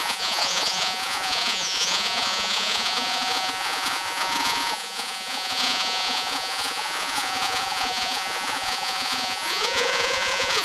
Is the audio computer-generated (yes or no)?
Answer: yes